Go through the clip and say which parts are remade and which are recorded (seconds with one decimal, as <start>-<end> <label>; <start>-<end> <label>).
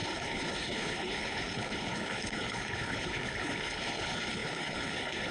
0.0-5.3 remade